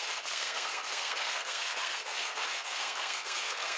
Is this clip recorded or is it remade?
remade